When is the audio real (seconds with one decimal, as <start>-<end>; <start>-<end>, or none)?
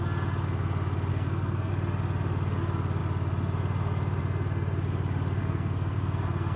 0.0-1.1; 1.7-5.4